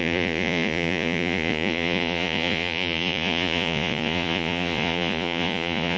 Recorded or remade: remade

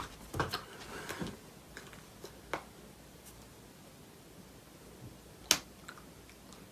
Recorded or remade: recorded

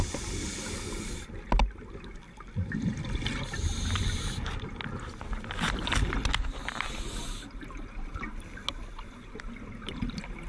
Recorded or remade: recorded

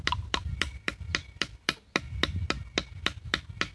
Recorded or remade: remade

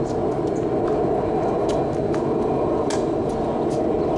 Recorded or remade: recorded